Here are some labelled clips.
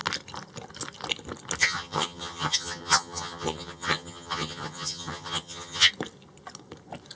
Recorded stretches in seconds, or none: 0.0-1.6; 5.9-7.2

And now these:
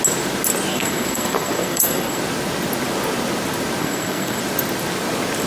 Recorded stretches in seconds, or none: 0.0-0.7; 2.2-3.8; 4.4-5.5

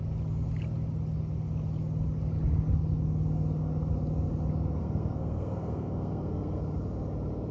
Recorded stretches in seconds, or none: 0.0-4.8; 6.6-7.5